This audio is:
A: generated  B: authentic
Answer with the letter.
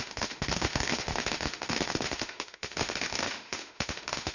A